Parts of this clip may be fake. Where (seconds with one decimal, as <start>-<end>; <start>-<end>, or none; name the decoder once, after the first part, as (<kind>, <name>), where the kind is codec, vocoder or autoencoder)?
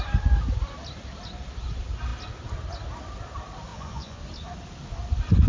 3.7-4.2 (vocoder, Vocos)